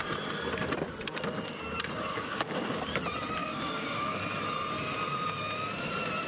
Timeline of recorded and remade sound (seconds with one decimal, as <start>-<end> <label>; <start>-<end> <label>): 0.0-2.1 recorded; 2.1-2.8 remade; 2.8-3.4 recorded; 3.4-4.2 remade; 4.2-6.3 recorded